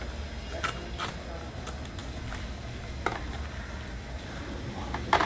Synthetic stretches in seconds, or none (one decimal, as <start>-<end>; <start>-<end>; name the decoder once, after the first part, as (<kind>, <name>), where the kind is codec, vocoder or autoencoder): none

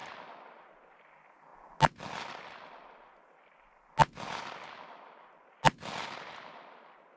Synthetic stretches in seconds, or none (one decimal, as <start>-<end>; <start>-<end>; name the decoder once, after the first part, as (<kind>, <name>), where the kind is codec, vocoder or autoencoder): none